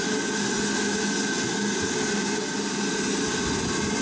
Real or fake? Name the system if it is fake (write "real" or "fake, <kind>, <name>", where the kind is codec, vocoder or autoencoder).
real